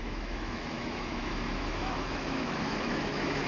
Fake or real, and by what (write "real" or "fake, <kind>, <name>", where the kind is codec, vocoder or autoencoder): fake, autoencoder, DAC-VAE